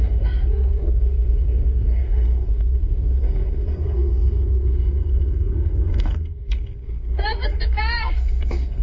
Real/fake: fake